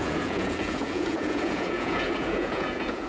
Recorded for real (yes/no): no